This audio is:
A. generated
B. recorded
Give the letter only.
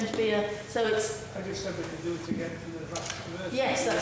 B